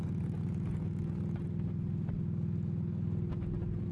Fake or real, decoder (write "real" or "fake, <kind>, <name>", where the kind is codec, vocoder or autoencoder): real